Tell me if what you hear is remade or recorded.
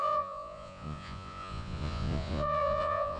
remade